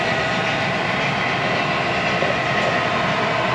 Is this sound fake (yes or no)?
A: no